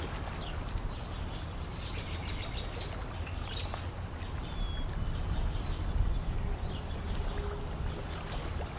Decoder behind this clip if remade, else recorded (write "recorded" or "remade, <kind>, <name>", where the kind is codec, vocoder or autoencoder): recorded